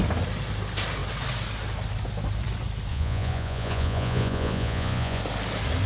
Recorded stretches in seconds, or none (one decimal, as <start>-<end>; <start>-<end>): 0.0-2.9; 5.2-5.9